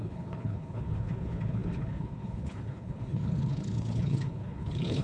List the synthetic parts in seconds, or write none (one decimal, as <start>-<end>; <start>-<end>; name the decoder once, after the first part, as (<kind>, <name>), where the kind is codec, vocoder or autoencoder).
0.0-5.0 (codec, HILCodec)